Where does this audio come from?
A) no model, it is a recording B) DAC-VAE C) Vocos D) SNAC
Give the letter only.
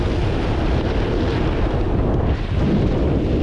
A